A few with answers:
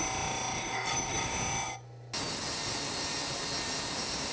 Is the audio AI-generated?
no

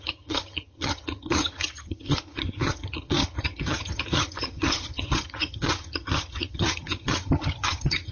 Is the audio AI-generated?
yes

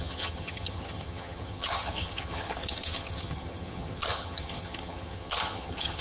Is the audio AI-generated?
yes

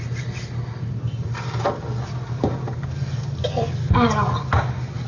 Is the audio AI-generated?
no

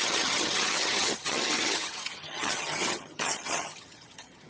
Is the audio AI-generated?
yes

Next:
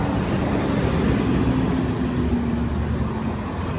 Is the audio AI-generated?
no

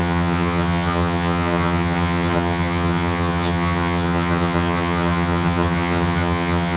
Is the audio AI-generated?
yes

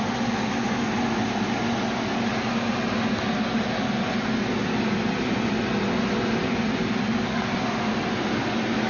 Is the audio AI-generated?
no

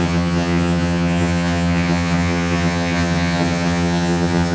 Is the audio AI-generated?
yes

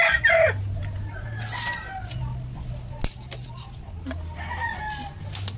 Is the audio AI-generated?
no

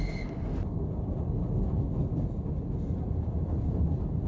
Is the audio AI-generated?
no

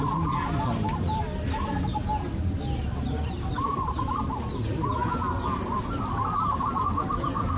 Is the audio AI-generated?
no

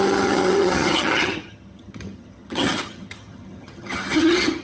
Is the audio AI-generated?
yes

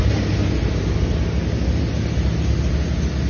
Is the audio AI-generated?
no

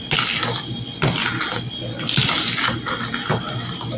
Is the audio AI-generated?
no